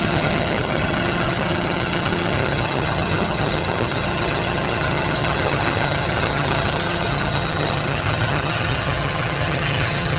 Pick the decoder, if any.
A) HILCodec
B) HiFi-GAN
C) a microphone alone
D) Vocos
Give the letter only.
B